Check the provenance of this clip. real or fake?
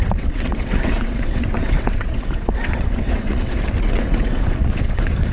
fake